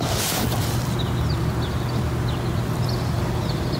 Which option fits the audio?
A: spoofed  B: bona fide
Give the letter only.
B